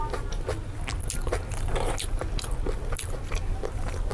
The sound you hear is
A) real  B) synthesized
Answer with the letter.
A